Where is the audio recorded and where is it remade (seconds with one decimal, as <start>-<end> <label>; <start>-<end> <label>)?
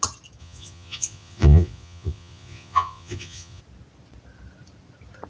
0.0-0.4 recorded; 0.4-3.6 remade; 3.6-5.3 recorded